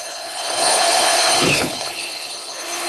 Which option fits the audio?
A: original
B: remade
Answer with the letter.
B